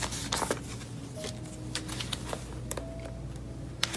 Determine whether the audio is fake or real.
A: real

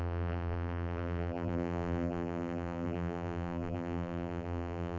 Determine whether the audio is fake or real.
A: fake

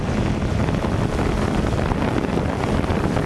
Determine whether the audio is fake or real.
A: fake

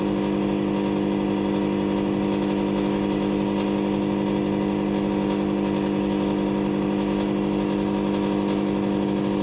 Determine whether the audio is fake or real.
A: real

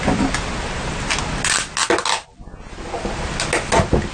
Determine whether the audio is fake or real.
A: real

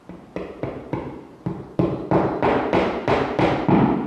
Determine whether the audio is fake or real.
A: fake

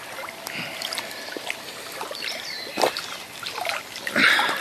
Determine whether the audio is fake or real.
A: fake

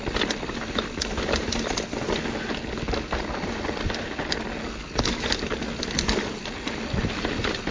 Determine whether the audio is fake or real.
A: real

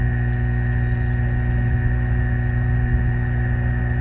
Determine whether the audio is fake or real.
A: real